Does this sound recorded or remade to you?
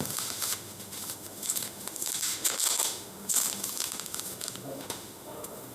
remade